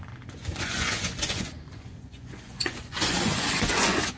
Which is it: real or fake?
fake